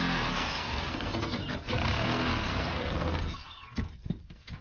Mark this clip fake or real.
fake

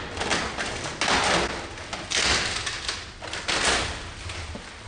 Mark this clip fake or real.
real